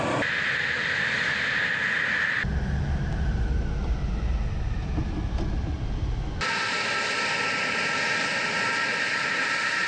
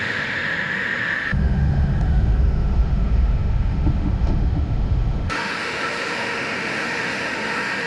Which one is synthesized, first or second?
second